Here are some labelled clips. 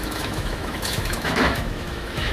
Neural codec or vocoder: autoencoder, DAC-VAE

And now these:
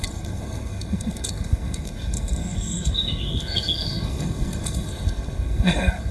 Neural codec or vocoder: codec, SNAC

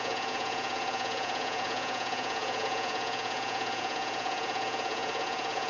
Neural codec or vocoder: vocoder, Vocos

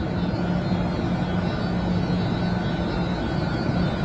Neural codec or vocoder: none